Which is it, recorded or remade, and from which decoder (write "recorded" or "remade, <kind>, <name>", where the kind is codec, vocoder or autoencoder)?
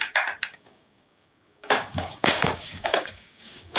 remade, codec, DAC